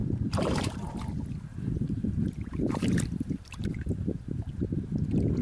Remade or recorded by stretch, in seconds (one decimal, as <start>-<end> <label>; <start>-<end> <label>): 0.0-1.1 remade; 1.1-1.5 recorded; 1.5-4.5 remade; 4.5-5.4 recorded

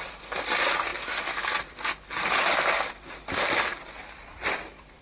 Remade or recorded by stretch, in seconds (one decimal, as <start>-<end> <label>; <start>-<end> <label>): 0.0-0.9 remade; 0.9-3.1 recorded; 3.1-5.0 remade

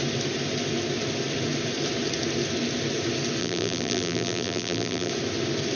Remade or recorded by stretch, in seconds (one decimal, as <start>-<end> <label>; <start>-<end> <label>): 0.0-3.4 recorded; 3.4-5.1 remade; 5.1-5.8 recorded

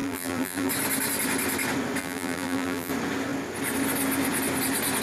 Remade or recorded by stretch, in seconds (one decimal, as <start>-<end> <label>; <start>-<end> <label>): 0.0-0.7 remade; 0.7-2.0 recorded; 2.0-2.9 remade; 2.9-5.0 recorded

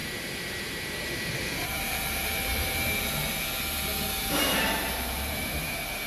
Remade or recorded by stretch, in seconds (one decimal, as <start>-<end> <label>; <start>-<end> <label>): 0.0-3.0 remade; 3.0-4.2 recorded; 4.2-6.1 remade

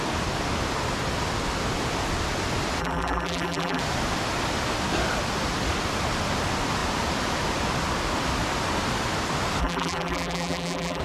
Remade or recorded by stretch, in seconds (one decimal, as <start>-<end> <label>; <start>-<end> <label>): 0.0-2.8 recorded; 2.8-3.8 remade; 3.8-9.6 recorded; 9.6-11.0 remade

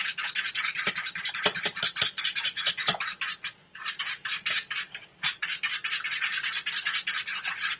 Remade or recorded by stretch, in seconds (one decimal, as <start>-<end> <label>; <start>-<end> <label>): 0.0-0.7 remade; 0.7-3.7 recorded; 3.7-5.1 remade; 5.1-6.7 recorded; 6.7-7.8 remade

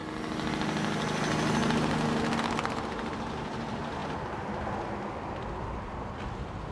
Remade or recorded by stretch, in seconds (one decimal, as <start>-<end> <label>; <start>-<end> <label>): 0.0-6.7 recorded